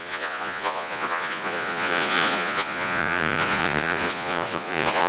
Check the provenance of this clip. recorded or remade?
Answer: remade